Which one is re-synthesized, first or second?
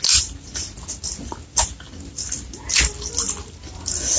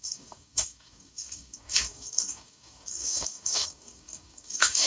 second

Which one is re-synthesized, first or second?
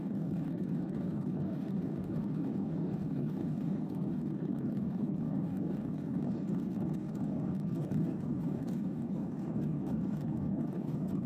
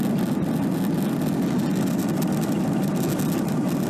first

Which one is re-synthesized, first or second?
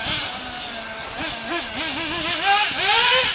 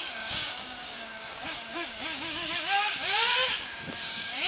second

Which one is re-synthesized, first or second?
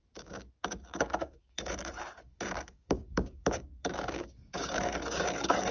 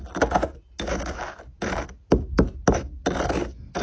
first